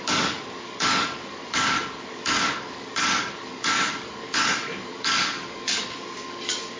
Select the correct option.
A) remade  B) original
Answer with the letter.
A